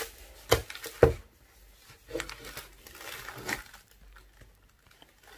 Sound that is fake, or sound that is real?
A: real